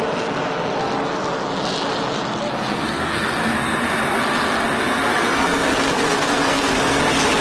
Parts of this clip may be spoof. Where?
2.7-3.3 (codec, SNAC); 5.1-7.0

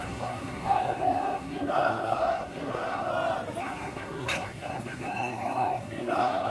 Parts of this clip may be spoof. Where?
0.0-3.1 (codec, SNAC); 3.6-6.5

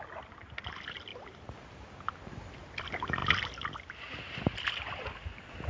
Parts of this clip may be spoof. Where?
none